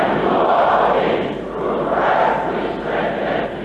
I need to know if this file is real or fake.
fake